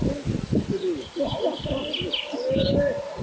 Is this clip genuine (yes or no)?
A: yes